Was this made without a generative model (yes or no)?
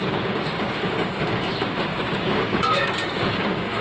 no